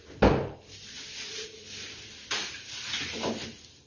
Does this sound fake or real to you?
real